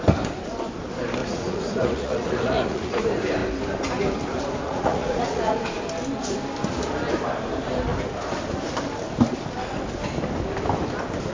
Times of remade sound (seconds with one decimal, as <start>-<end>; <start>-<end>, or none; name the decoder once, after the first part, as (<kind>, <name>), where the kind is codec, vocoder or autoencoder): 1.2-3.0 (vocoder, Vocos); 4.6-5.6